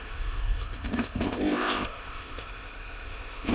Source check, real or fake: fake